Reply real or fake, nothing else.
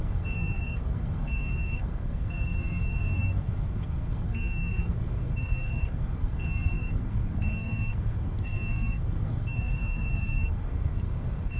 fake